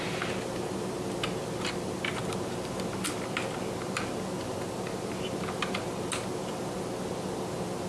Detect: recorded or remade recorded